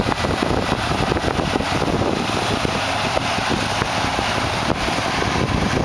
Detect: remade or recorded remade